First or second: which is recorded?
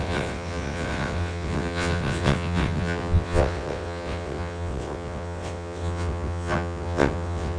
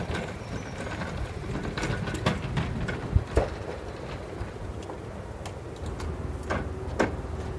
second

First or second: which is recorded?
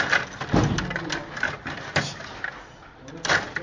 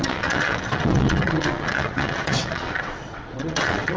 first